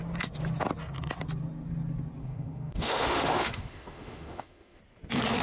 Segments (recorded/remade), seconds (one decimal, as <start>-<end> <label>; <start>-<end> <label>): 0.0-2.2 recorded; 2.2-4.8 remade; 4.8-5.4 recorded